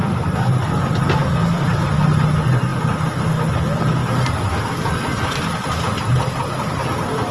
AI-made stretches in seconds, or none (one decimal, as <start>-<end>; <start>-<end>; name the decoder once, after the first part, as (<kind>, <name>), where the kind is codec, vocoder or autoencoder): none